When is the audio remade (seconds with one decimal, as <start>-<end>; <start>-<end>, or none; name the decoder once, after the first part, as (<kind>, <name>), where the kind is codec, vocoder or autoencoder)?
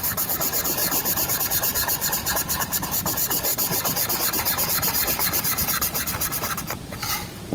0.8-1.4 (vocoder, BigVGAN v2)